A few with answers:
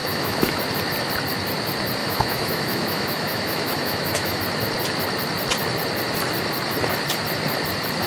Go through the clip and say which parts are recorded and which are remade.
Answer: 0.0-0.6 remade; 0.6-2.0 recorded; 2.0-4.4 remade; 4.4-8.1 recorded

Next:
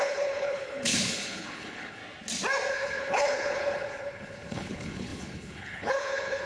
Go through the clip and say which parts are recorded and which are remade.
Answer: 0.0-2.0 remade; 2.0-2.7 recorded; 2.7-6.5 remade

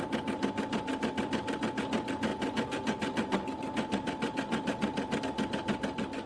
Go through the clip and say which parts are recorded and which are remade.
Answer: 0.0-6.3 recorded

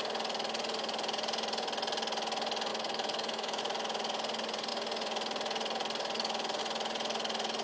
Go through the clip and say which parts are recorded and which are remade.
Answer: 0.0-2.7 recorded; 2.7-3.6 remade; 3.6-7.6 recorded

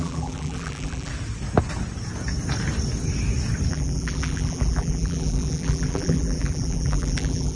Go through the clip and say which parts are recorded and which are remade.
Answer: 0.0-1.1 remade; 1.1-3.7 recorded; 3.7-7.5 remade

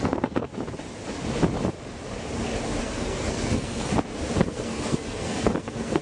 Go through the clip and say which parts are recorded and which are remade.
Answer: 0.0-0.5 remade; 0.5-2.8 recorded; 2.8-3.9 remade; 3.9-4.5 recorded; 4.5-6.0 remade

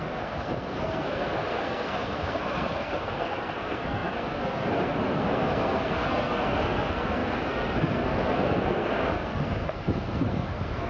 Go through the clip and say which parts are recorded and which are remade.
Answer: 0.0-10.9 remade